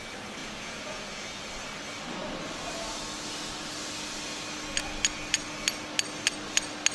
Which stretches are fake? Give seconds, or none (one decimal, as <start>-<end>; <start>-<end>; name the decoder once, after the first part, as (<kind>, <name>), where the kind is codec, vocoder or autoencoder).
0.4-1.5 (vocoder, Vocos)